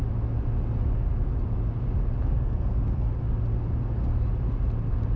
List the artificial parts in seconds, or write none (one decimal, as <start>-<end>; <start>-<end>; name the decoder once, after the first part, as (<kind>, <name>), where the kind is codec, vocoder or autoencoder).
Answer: 2.3-3.1 (codec, SNAC)